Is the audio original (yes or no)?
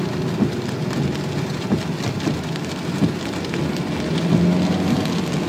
yes